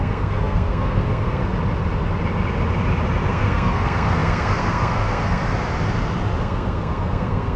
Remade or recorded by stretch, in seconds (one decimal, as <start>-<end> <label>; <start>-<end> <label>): 0.0-1.4 remade; 1.4-3.3 recorded; 3.3-5.4 remade; 5.4-6.4 recorded; 6.4-7.6 remade

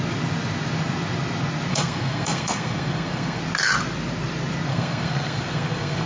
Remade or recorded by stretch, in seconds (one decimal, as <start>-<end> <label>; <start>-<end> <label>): 0.0-1.7 recorded; 1.7-3.4 remade; 3.4-4.7 recorded; 4.7-6.1 remade

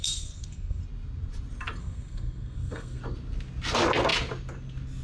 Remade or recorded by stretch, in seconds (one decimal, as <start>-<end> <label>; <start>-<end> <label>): 0.0-0.8 remade; 0.8-1.8 recorded; 1.8-3.0 remade; 3.0-5.0 recorded

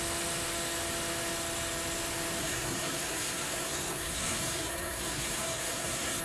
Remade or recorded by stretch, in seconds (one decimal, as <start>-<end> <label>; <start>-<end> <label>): 0.0-2.4 recorded; 2.4-6.2 remade

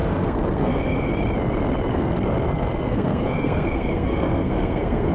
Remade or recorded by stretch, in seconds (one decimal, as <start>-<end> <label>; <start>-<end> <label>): 0.0-1.1 remade; 1.1-1.9 recorded; 1.9-5.1 remade